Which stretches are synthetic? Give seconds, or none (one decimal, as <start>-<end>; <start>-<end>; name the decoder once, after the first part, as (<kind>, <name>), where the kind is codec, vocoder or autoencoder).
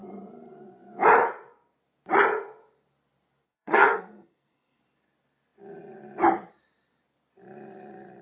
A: 3.5-4.8 (codec, SNAC)